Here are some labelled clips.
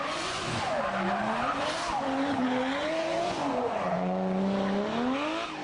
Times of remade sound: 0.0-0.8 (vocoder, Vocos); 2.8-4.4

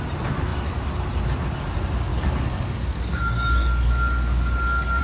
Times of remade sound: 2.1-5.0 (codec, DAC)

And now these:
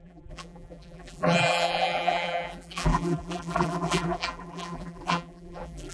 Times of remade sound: 0.0-5.9 (vocoder, BigVGAN v2)

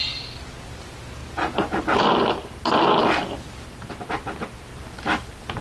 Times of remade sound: none

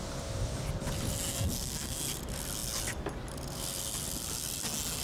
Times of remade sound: 1.3-2.0 (codec, SNAC)

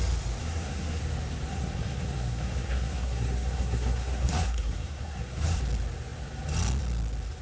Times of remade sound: 0.4-1.0 (codec, SNAC); 1.5-5.6

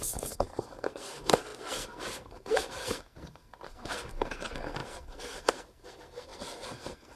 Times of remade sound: 0.0-7.2 (codec, SNAC)

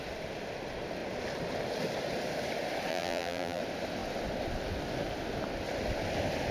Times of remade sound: 2.9-3.6 (vocoder, BigVGAN v2)